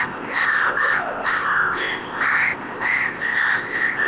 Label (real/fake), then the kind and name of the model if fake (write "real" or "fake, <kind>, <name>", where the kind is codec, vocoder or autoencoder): fake, codec, ZipCodec